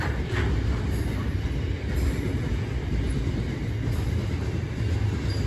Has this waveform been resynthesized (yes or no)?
no